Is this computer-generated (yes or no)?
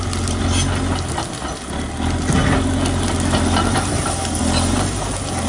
no